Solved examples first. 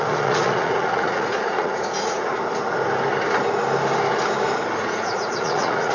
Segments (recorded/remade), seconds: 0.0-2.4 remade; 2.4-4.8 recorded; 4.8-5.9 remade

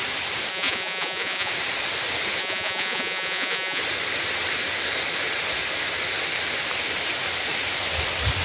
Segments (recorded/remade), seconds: 0.0-0.5 recorded; 0.5-1.5 remade; 1.5-2.4 recorded; 2.4-3.8 remade; 3.8-8.4 recorded

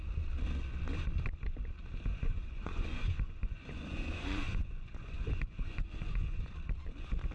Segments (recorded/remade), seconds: 0.0-2.1 recorded; 2.1-6.5 remade; 6.5-7.3 recorded

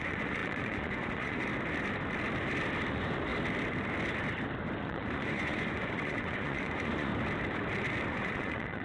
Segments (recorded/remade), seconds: 0.0-1.5 remade; 1.5-2.9 recorded; 2.9-3.3 remade; 3.3-4.8 recorded; 4.8-7.1 remade; 7.1-8.1 recorded; 8.1-8.8 remade

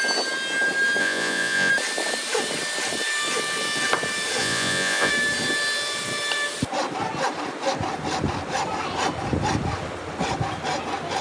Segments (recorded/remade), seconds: 0.0-1.0 recorded; 1.0-1.7 remade; 1.7-4.4 recorded; 4.4-5.1 remade; 5.1-11.2 recorded

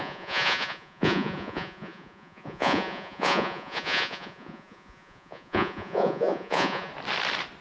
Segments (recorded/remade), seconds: 0.0-6.9 remade; 6.9-7.6 recorded